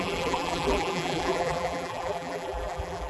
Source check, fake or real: fake